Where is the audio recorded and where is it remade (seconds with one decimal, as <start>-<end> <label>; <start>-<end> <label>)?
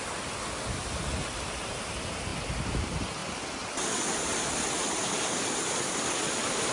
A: 0.0-6.7 recorded